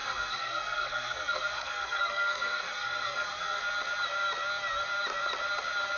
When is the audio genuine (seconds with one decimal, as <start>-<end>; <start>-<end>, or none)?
3.6-6.0